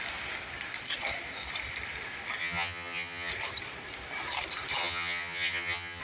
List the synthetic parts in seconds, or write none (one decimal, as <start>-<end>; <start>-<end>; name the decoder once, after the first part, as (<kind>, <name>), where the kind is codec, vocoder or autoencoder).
2.4-3.3 (vocoder, HiFi-GAN); 4.8-6.0